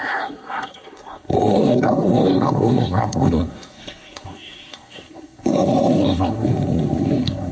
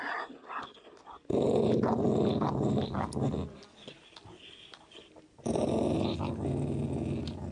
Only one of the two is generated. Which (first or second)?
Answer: first